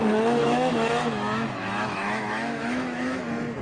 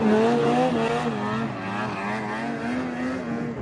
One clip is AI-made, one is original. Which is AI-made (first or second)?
first